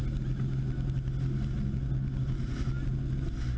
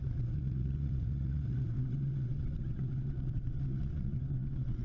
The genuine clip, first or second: first